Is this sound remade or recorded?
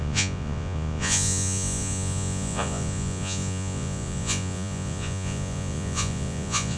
remade